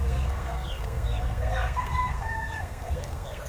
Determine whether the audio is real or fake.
fake